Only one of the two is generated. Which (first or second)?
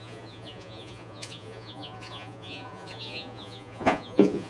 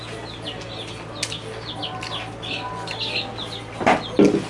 first